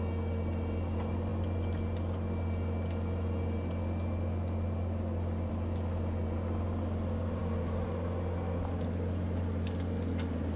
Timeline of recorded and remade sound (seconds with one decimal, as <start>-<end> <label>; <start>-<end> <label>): 0.0-10.6 recorded